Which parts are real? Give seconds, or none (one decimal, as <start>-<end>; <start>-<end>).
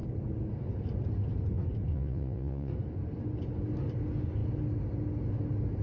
0.0-1.9; 2.7-5.8